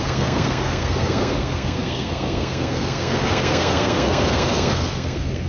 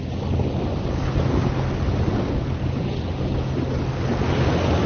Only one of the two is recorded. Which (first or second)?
second